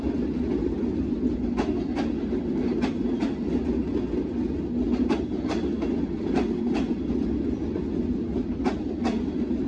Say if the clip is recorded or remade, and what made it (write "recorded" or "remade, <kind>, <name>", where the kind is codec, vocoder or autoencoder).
recorded